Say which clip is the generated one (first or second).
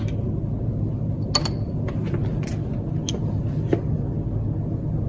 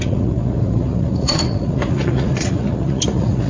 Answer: second